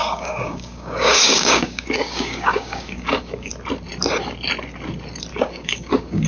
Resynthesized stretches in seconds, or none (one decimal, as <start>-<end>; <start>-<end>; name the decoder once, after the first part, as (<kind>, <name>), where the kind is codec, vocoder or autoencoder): 0.0-3.5 (codec, DAC); 5.3-6.3